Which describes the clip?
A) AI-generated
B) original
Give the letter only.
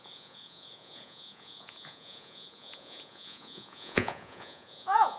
A